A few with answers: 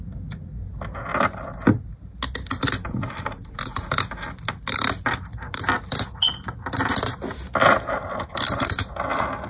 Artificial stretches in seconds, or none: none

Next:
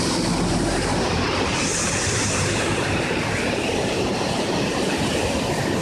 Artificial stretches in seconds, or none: 1.5-5.0 (vocoder, BigVGAN v2)

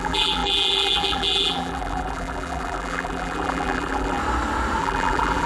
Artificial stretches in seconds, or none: 0.0-4.2 (vocoder, BigVGAN v2); 4.8-5.5

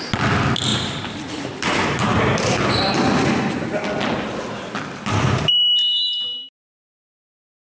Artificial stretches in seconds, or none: 0.7-2.6 (vocoder, BigVGAN v2)

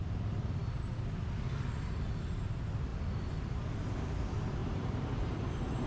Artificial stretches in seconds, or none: 2.9-3.9 (vocoder, BigVGAN v2); 4.6-5.5

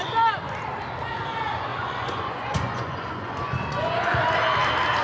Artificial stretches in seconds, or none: 1.7-4.2 (vocoder, Vocos)